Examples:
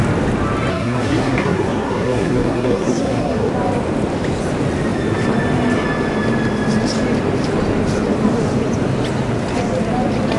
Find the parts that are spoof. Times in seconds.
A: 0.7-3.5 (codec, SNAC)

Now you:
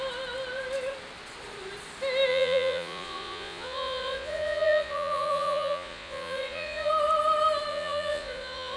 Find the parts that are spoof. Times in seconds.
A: 2.3-6.9 (vocoder, Vocos); 7.7-8.8

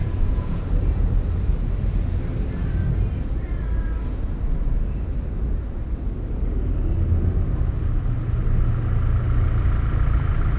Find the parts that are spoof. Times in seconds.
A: 0.0-0.6 (vocoder, Vocos)

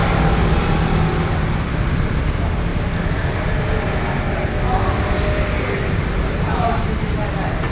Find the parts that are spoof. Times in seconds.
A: none

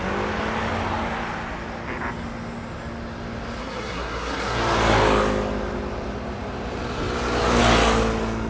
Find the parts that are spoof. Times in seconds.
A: 3.6-4.6 (codec, SNAC)